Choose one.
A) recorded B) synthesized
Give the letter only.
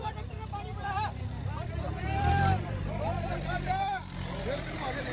B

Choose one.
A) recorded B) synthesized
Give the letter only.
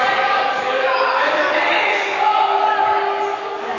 B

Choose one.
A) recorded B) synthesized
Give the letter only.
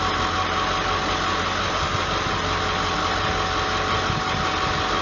A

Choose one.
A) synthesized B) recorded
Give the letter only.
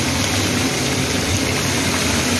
B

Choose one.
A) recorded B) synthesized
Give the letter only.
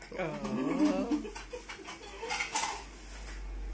A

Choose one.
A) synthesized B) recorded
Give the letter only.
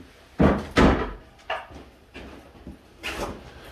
B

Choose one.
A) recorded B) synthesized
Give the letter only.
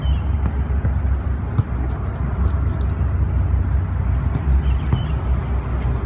A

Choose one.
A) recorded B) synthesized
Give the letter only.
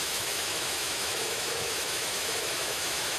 B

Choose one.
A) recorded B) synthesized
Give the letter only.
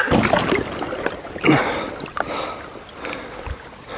A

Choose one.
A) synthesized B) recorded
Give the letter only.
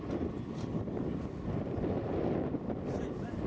B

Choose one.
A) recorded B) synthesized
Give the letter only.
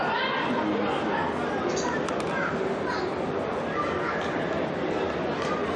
A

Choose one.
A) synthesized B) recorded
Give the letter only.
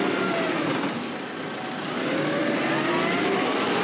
B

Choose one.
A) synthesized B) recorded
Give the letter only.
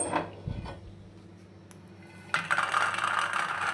B